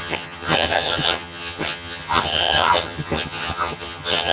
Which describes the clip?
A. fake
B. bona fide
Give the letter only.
A